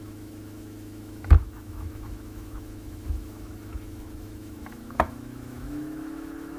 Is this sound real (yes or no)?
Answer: no